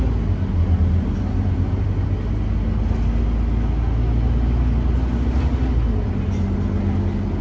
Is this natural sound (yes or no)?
yes